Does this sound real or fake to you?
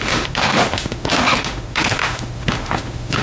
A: fake